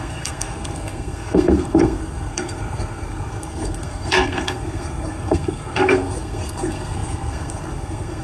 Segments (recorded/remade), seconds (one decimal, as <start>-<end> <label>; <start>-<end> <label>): 0.0-8.2 remade